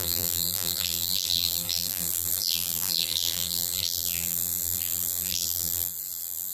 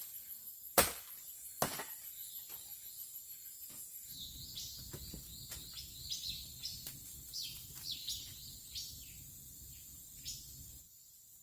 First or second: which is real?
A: second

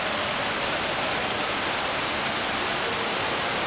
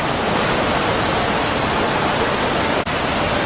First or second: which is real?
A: first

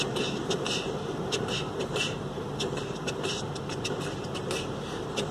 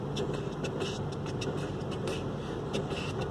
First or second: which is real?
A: second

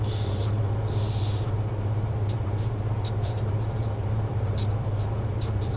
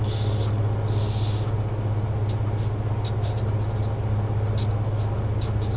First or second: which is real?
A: second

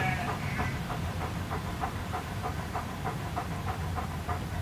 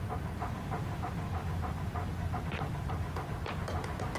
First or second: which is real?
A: second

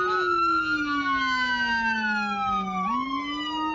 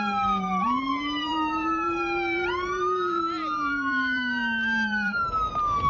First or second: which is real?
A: first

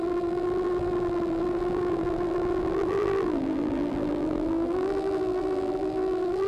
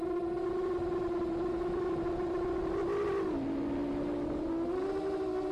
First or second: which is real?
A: second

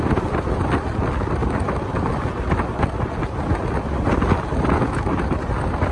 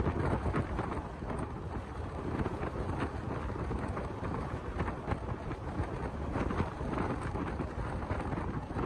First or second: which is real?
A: first